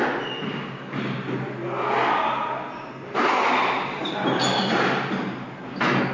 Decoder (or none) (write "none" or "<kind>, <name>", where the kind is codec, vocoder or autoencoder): none